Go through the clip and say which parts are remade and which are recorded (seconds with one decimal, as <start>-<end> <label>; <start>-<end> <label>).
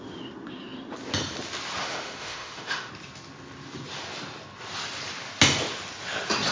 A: 0.0-1.8 recorded; 1.8-2.9 remade; 2.9-6.5 recorded